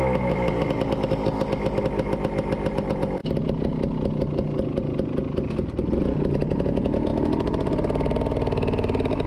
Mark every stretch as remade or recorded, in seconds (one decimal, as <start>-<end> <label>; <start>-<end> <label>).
0.0-9.3 recorded